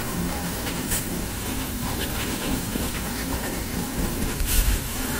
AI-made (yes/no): yes